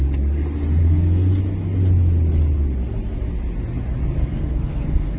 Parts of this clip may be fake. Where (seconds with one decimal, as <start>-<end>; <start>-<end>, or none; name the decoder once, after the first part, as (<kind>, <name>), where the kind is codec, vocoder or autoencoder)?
0.8-1.3 (codec, SNAC); 4.2-5.2